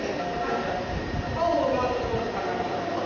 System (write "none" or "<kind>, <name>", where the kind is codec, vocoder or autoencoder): none